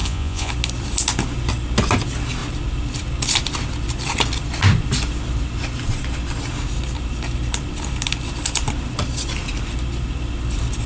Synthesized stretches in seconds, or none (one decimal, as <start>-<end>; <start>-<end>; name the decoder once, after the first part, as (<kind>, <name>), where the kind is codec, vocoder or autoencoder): 0.0-0.5 (vocoder, Vocos)